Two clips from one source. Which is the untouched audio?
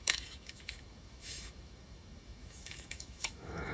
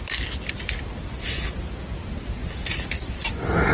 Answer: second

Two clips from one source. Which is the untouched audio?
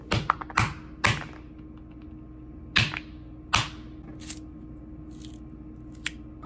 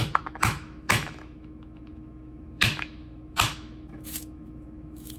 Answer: first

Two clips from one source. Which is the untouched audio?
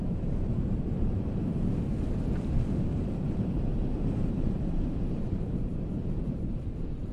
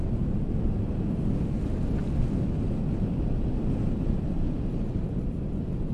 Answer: second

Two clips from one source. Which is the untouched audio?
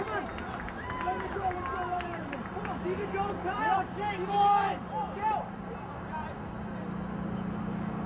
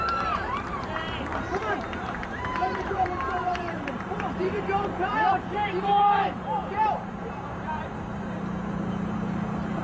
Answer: first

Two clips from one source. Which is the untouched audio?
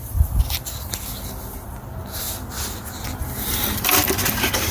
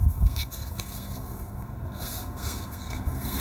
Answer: first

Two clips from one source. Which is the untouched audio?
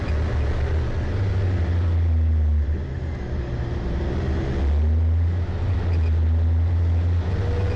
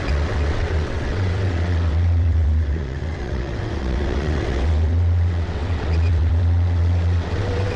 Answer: first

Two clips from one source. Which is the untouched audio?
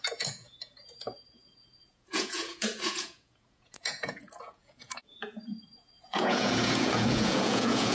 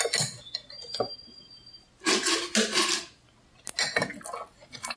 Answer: second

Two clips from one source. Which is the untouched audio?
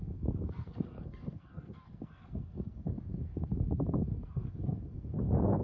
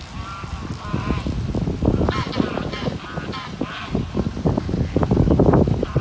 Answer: second